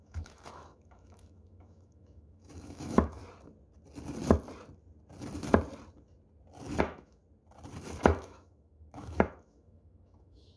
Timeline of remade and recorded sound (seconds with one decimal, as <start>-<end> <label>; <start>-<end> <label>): 0.0-3.2 remade; 3.2-6.8 recorded; 6.8-7.2 remade; 7.2-8.0 recorded; 8.0-10.6 remade